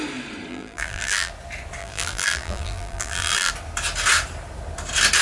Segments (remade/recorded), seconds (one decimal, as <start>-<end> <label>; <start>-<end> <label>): 0.0-0.5 recorded; 0.5-1.3 remade; 1.3-1.8 recorded; 1.8-3.5 remade; 3.5-5.2 recorded